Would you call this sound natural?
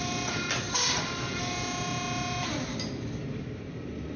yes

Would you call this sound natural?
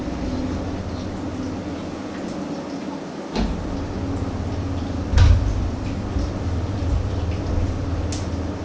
yes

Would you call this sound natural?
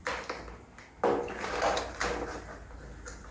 yes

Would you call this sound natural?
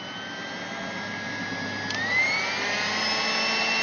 yes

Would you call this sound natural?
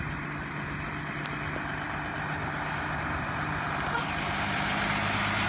yes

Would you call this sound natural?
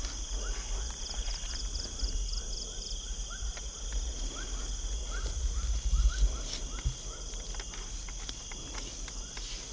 yes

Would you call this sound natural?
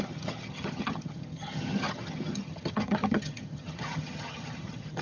no